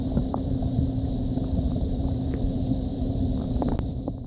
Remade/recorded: remade